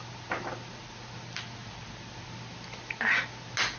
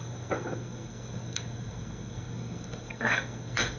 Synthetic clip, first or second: second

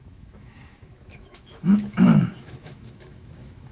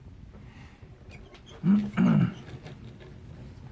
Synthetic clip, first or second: first